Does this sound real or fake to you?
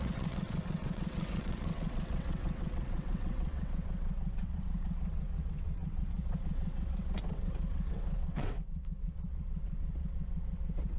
fake